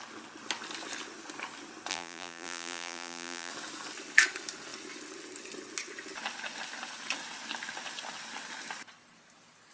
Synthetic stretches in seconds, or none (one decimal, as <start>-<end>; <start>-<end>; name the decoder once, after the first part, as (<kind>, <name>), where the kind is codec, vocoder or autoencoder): 1.9-3.5 (vocoder, BigVGAN v2)